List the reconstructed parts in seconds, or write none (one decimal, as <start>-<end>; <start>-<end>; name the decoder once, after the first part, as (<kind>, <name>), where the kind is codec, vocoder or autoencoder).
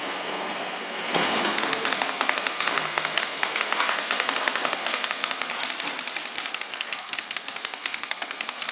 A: 0.0-5.5 (codec, SNAC); 6.5-8.7